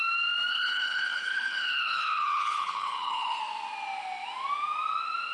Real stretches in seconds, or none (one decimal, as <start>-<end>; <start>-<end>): 0.0-0.5; 3.4-5.3